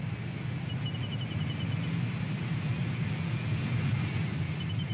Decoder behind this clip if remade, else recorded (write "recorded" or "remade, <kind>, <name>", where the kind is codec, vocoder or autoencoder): recorded